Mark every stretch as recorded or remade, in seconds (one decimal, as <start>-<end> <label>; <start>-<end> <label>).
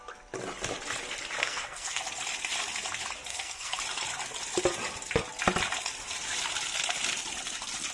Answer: 0.0-1.4 recorded; 1.4-2.0 remade; 2.0-3.3 recorded; 3.3-3.8 remade; 3.8-7.9 recorded